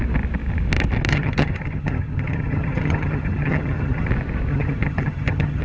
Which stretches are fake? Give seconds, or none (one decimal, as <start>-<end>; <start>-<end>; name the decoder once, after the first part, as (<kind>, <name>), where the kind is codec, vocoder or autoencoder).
1.1-4.1 (vocoder, HiFi-GAN); 4.5-5.6